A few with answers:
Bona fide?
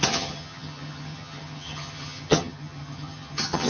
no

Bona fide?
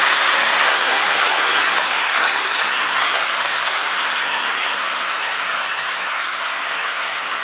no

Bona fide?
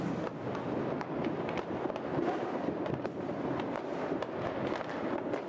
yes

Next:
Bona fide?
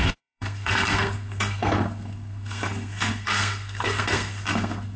no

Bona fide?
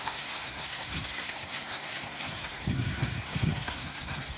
no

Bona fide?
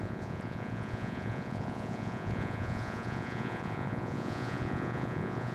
no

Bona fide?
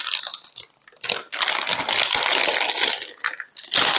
yes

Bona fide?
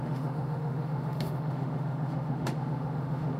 no